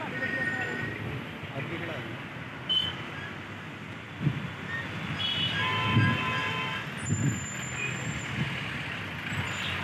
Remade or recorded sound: recorded